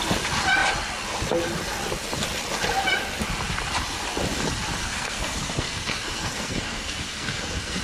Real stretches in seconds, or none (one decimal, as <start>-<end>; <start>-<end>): 0.0-4.8